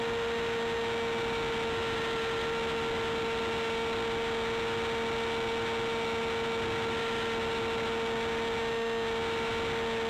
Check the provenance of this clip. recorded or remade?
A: recorded